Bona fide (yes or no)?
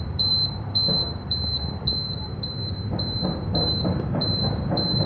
no